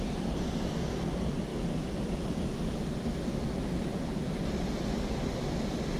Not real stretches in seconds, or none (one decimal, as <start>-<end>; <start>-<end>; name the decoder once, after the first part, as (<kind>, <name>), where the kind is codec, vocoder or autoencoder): none